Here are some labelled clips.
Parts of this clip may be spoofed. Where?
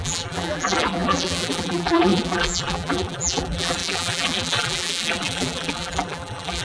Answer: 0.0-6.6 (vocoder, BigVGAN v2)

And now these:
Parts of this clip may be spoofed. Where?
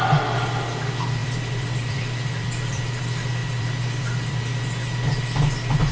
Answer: 1.2-2.0 (vocoder, BigVGAN v2); 2.4-3.0; 3.4-4.4